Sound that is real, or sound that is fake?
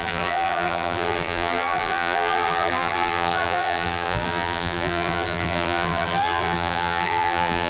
fake